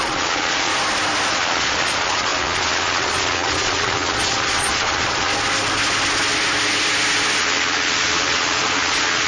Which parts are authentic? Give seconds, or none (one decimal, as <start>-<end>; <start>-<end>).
0.7-1.3; 5.3-7.4